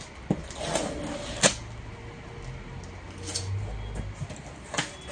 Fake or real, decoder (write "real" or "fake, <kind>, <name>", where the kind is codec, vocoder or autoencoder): real